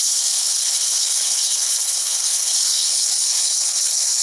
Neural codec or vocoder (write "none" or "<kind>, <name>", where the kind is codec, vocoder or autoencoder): codec, HILCodec